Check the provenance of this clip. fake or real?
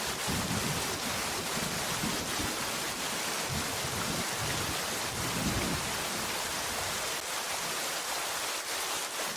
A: real